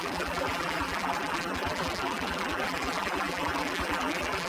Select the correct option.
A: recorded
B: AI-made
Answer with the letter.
B